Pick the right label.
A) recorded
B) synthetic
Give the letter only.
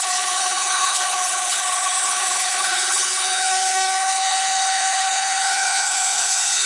B